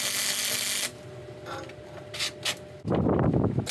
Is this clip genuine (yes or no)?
yes